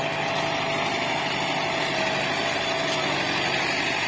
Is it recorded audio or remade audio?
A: recorded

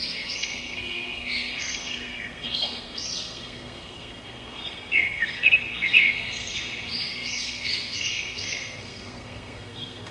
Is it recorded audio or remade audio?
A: remade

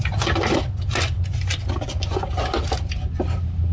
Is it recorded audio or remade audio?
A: recorded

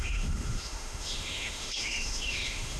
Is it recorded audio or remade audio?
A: remade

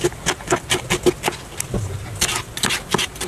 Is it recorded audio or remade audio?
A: recorded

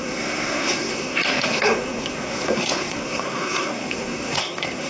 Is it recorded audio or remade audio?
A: remade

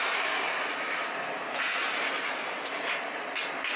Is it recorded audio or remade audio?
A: recorded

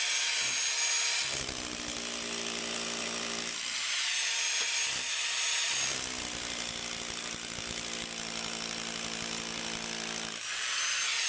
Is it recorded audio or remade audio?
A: recorded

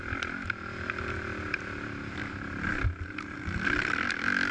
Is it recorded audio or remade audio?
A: recorded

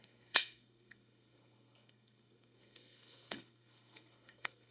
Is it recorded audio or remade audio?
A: remade